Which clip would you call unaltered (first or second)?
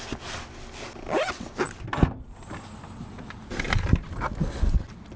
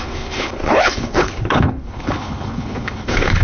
first